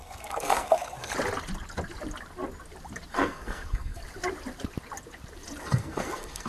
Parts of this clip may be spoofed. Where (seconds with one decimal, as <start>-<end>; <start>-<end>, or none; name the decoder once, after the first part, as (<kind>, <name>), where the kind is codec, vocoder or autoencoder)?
0.0-1.1 (codec, SNAC); 3.1-4.0; 5.6-6.5